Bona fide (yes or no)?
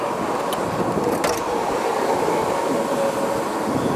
yes